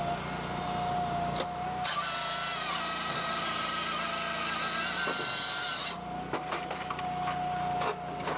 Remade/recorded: recorded